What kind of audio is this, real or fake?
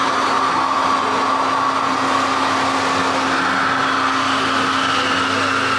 real